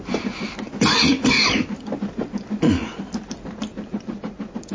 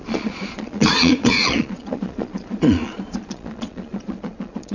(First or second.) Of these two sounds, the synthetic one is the second